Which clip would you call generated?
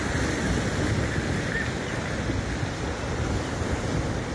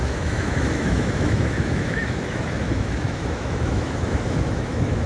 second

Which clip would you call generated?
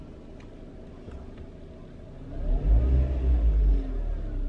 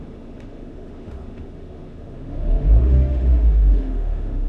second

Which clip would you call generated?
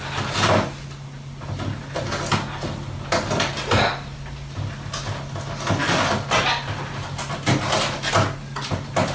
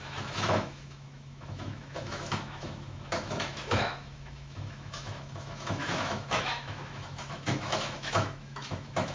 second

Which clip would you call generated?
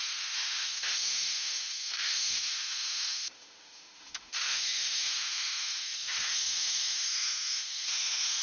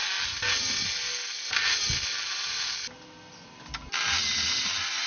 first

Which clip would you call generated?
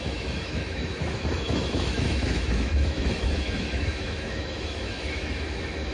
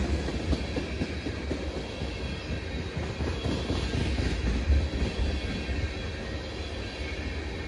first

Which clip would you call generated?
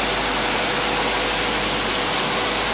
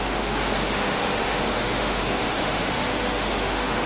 second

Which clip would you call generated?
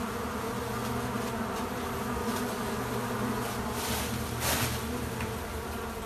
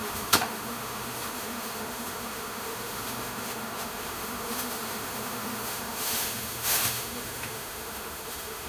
second